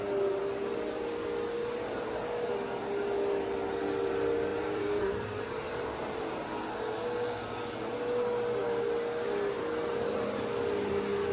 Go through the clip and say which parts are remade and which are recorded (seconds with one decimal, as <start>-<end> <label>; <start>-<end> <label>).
0.0-4.5 recorded; 4.5-6.4 remade; 6.4-11.3 recorded